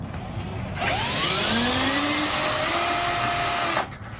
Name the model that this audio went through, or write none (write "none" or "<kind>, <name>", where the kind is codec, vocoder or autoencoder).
none